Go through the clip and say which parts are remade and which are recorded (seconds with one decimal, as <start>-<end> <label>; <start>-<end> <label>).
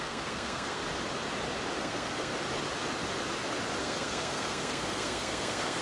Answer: 0.0-0.8 remade; 0.8-1.8 recorded; 1.8-2.3 remade; 2.3-3.8 recorded; 3.8-5.8 remade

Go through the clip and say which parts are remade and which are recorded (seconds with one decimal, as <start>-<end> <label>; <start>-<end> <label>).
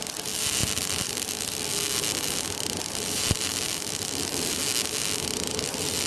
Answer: 0.0-1.7 remade; 1.7-2.8 recorded; 2.8-4.6 remade; 4.6-5.6 recorded; 5.6-6.1 remade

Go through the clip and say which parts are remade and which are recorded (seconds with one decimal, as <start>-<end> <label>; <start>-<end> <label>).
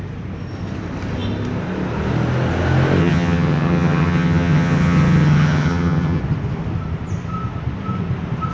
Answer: 0.0-3.0 recorded; 3.0-6.2 remade; 6.2-8.5 recorded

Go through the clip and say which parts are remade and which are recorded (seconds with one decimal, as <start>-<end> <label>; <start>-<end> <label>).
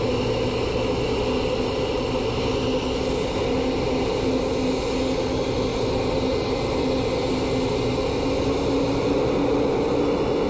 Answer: 0.0-10.5 recorded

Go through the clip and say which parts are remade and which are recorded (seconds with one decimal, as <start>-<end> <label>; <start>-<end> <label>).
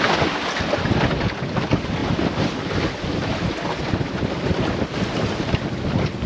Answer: 0.0-6.3 recorded